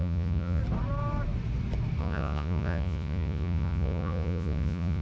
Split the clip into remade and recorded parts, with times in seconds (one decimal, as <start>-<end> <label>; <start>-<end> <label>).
0.0-0.6 remade; 0.6-2.0 recorded; 2.0-5.0 remade